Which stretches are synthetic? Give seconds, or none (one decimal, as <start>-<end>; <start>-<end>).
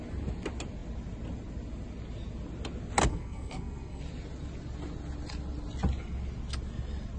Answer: 3.1-4.0